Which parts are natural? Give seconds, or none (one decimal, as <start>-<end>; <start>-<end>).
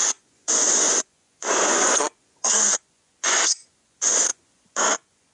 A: none